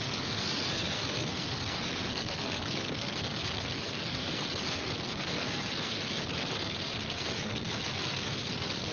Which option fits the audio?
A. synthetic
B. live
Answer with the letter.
A